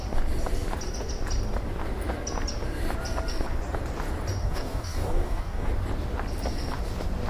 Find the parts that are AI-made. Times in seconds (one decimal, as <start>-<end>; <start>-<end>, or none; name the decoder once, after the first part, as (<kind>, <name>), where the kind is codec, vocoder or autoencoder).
4.4-5.7 (codec, DAC)